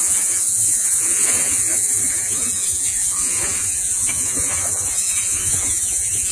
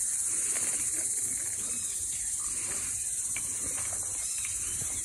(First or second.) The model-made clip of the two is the first